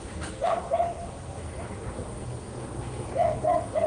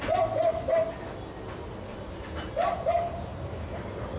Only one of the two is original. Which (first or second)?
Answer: second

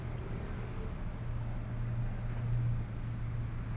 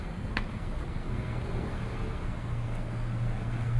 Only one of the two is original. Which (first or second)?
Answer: first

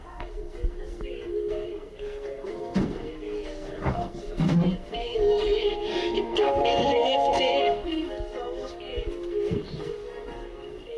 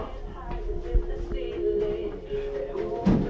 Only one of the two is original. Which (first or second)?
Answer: second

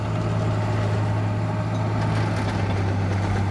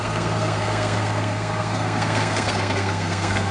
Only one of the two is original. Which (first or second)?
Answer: first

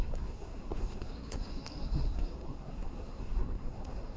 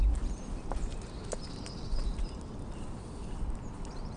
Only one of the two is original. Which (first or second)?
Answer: second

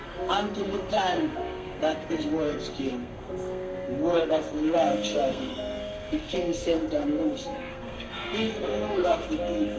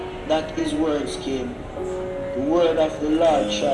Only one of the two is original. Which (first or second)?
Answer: second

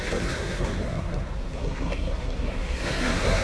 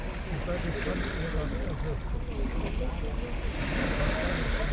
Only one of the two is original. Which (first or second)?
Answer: second